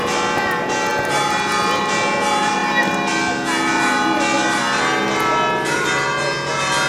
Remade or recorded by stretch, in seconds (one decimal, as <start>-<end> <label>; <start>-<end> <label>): 0.0-6.9 recorded